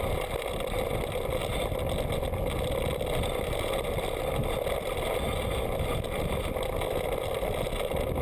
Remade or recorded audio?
recorded